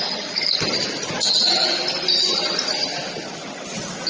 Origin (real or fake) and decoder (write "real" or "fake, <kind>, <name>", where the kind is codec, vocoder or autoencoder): real